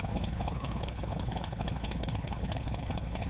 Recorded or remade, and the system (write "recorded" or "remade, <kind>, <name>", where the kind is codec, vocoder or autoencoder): remade, codec, HILCodec